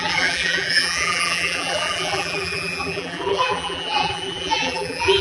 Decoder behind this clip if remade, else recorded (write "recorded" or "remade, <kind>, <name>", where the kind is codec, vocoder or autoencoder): remade, vocoder, BigVGAN v2